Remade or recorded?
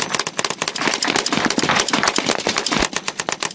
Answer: recorded